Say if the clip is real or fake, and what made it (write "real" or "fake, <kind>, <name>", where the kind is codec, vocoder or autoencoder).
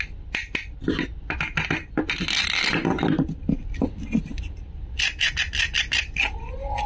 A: real